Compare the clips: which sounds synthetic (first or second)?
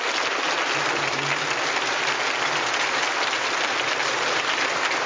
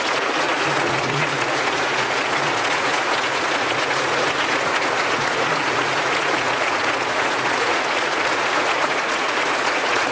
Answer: second